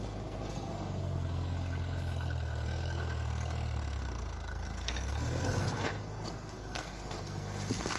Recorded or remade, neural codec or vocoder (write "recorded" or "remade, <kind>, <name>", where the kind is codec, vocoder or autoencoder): remade, codec, SNAC